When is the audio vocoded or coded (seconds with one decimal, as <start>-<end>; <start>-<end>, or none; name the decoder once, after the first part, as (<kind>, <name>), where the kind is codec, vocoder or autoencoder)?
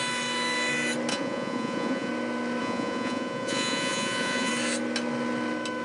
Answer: 1.1-2.1 (vocoder, Vocos); 2.6-4.5